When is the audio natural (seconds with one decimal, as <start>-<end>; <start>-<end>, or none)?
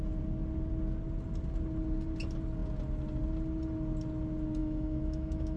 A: 0.0-4.6